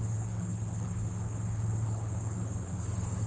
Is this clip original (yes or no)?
no